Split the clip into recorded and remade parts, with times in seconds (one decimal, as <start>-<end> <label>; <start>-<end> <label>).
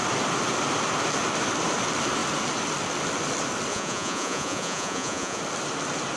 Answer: 0.0-3.7 recorded; 3.7-5.4 remade; 5.4-6.2 recorded